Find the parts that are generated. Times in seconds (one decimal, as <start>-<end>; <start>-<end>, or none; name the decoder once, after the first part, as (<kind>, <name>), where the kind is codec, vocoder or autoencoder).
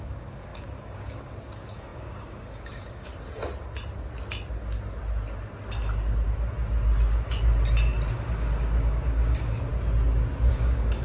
0.0-3.1 (codec, DAC); 8.1-9.7; 10.5-11.0